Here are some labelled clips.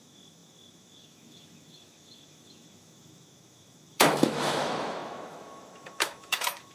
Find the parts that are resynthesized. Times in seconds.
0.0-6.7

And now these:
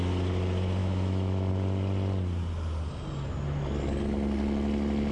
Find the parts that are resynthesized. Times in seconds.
0.8-1.5

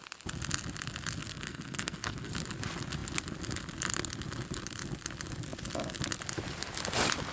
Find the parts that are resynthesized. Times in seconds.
1.2-2.3